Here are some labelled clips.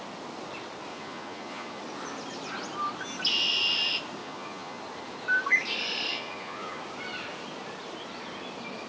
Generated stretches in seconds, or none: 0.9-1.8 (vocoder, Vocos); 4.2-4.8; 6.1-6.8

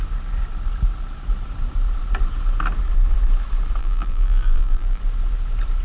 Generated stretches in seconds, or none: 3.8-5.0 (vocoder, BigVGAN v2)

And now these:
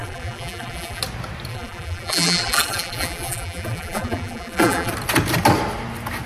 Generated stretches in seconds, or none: 0.0-1.0 (vocoder, BigVGAN v2); 1.5-4.9

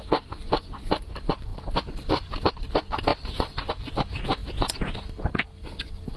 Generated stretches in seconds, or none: none

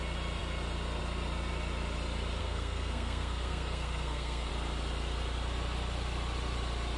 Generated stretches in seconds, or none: 2.4-4.5 (codec, SNAC)

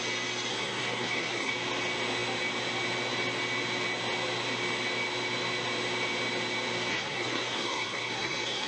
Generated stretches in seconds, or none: 0.5-1.5 (codec, SNAC); 6.9-8.7

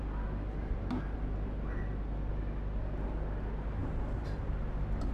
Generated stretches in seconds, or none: 3.8-4.4 (vocoder, BigVGAN v2)

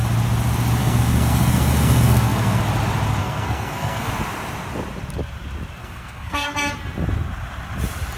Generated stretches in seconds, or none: 0.8-2.6 (codec, SNAC); 3.2-4.1; 5.8-6.7